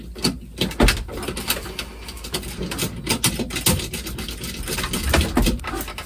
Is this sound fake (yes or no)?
no